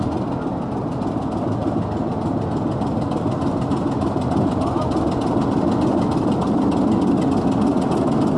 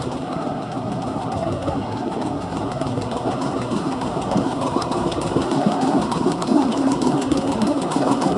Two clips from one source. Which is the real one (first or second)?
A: first